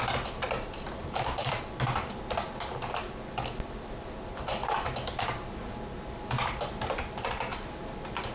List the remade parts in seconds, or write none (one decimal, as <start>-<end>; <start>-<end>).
1.0-1.6